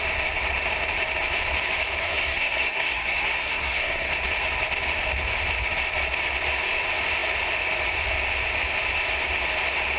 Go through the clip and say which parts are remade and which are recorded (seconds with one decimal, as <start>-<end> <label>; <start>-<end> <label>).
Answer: 0.0-2.0 recorded; 2.0-4.1 remade; 4.1-10.0 recorded